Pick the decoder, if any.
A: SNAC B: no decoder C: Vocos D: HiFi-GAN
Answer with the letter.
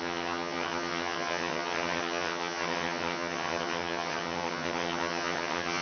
D